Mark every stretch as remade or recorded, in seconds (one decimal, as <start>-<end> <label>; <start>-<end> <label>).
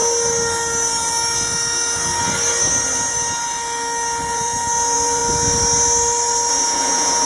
0.0-4.3 recorded; 4.3-5.2 remade; 5.2-6.5 recorded; 6.5-7.2 remade